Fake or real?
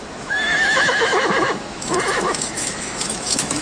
fake